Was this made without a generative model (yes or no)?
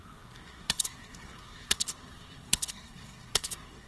no